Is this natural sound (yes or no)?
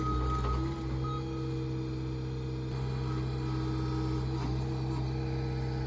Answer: yes